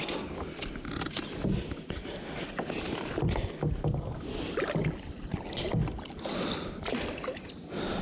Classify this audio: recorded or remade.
recorded